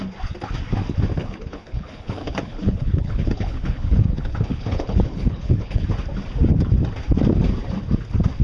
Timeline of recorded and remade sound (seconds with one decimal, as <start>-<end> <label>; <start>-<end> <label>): 0.0-1.2 recorded; 1.2-5.8 remade; 5.8-8.4 recorded